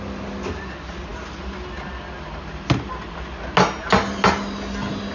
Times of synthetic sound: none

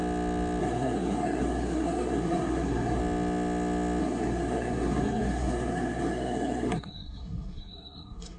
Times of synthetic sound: 0.6-3.0 (codec, SNAC); 4.0-8.4

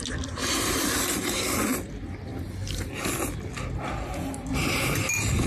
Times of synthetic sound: 0.4-1.4 (vocoder, BigVGAN v2); 2.3-3.0; 4.5-5.1

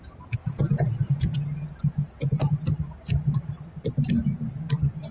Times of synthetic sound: 0.4-3.5 (vocoder, BigVGAN v2)

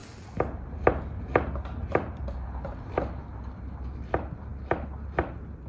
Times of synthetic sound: none

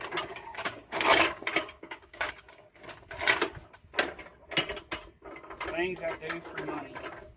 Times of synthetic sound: 0.6-2.7 (codec, DAC)

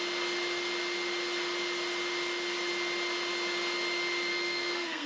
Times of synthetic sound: 4.3-5.1 (codec, SNAC)